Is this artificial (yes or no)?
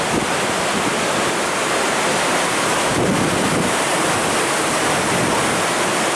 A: no